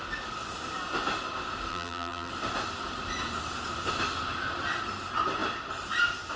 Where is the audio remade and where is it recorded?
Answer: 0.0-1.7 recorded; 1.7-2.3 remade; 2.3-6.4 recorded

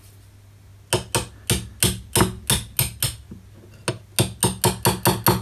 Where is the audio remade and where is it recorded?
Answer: 0.0-5.4 recorded

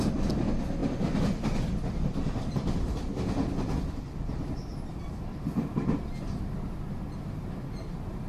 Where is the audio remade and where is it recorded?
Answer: 0.0-8.3 recorded

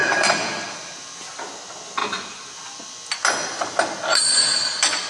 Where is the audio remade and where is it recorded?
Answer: 0.0-2.0 recorded; 2.0-2.5 remade; 2.5-5.1 recorded

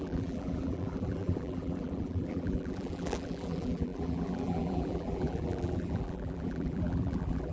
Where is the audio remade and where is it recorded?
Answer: 0.0-7.5 remade

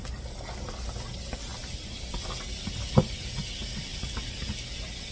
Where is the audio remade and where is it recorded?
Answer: 0.0-3.9 recorded; 3.9-4.5 remade; 4.5-5.1 recorded

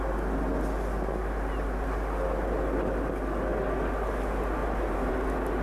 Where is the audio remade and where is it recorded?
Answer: 0.0-4.6 recorded; 4.6-5.1 remade; 5.1-5.6 recorded